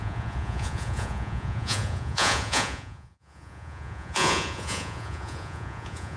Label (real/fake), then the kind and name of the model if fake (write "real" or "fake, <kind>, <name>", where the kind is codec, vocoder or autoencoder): fake, vocoder, Vocos